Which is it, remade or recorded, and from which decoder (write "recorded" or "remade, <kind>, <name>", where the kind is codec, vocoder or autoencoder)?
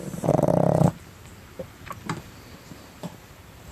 remade, vocoder, BigVGAN v2